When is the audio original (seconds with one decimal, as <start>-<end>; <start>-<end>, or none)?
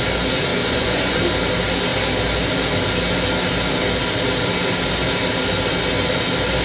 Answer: 0.0-0.5; 1.2-6.6